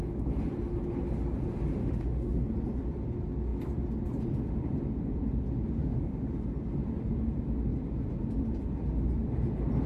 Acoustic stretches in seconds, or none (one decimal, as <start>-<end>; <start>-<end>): 0.0-1.8; 2.4-5.8; 6.3-9.9